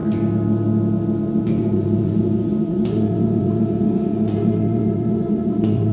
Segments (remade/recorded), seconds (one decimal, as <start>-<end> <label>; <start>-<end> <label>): 0.0-1.4 recorded; 1.4-5.9 remade